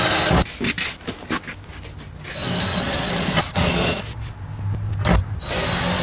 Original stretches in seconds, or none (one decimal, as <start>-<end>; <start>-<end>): 0.0-2.7; 4.0-6.0